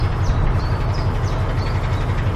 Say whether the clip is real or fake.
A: real